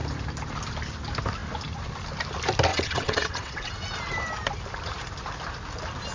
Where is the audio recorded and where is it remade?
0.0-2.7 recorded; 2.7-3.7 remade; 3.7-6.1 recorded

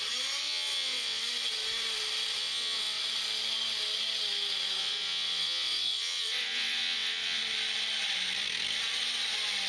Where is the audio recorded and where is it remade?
0.0-0.4 recorded; 0.4-1.2 remade; 1.2-2.4 recorded; 2.4-3.0 remade; 3.0-4.8 recorded; 4.8-7.4 remade; 7.4-9.7 recorded

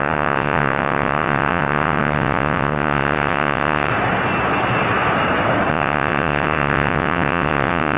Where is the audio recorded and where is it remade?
0.0-3.9 remade; 3.9-5.7 recorded; 5.7-8.0 remade

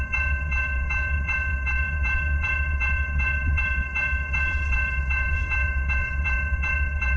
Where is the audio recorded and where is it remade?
0.0-7.2 remade

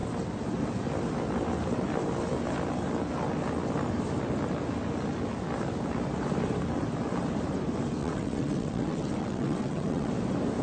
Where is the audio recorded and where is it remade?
0.0-8.0 recorded; 8.0-10.1 remade; 10.1-10.6 recorded

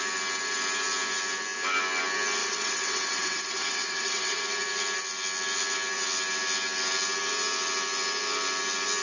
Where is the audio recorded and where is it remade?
0.0-2.4 recorded; 2.4-4.4 remade; 4.4-9.0 recorded

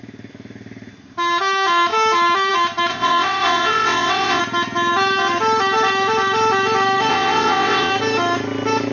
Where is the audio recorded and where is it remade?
0.0-2.9 recorded; 2.9-4.4 remade; 4.4-7.1 recorded; 7.1-7.9 remade; 7.9-8.9 recorded